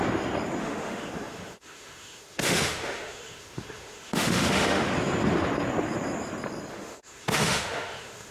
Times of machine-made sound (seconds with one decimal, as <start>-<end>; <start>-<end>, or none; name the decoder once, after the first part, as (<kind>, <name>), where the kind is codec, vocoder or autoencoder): 0.6-4.9 (autoencoder, DAC-VAE); 6.7-8.3